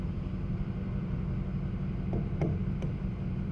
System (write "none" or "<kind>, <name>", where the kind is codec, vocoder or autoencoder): none